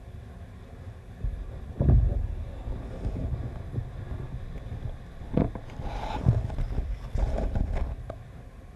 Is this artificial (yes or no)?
no